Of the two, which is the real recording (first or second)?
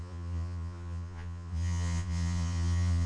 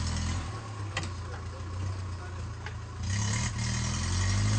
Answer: second